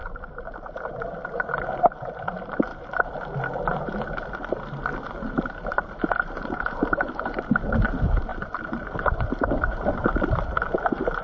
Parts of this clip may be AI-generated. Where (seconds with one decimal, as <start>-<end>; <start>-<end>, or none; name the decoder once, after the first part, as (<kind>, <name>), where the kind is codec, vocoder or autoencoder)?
0.0-2.7 (vocoder, BigVGAN v2); 5.1-11.2